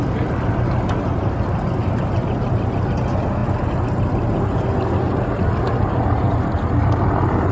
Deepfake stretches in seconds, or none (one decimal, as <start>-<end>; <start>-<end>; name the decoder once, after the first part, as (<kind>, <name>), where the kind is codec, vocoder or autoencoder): none